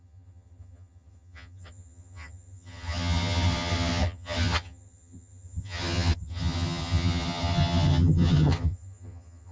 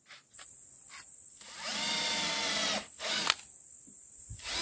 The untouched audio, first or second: second